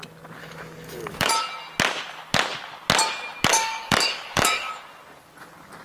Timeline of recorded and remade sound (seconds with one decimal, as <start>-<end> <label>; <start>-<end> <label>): 0.0-0.4 recorded; 0.4-1.3 remade; 1.3-3.5 recorded; 3.5-4.7 remade; 4.7-5.8 recorded